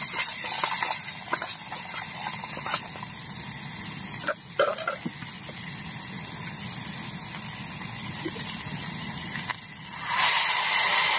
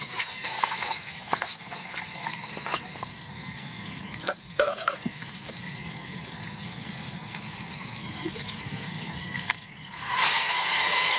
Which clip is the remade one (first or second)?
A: second